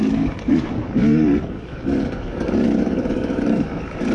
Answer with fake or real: fake